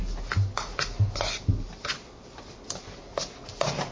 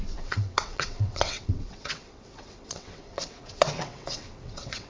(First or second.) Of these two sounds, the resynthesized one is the second